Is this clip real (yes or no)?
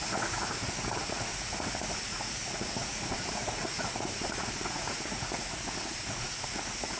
no